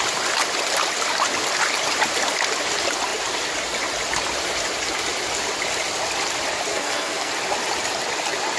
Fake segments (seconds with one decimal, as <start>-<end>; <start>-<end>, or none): 6.7-7.3